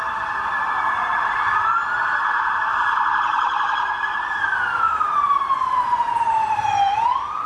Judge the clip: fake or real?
real